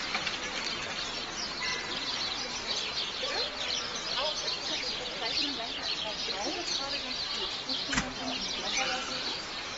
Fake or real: real